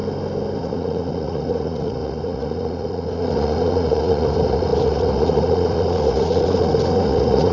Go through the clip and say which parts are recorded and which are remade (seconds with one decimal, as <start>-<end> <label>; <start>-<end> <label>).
0.0-0.6 recorded; 0.6-7.5 remade